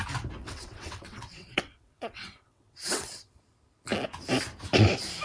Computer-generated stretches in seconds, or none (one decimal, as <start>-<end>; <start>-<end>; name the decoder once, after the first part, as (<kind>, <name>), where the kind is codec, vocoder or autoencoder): 0.4-3.4 (vocoder, WaveNeXt)